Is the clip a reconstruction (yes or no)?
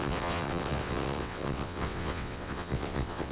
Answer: yes